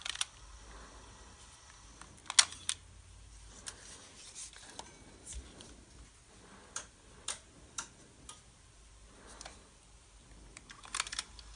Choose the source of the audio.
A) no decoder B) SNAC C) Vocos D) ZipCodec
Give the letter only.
A